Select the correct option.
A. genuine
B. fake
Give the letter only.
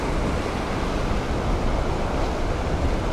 A